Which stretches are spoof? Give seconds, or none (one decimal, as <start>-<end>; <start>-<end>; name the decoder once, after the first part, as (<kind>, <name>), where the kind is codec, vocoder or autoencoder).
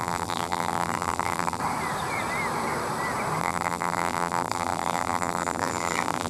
0.0-1.6 (vocoder, BigVGAN v2); 3.4-6.3